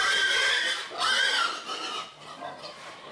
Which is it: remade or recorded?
recorded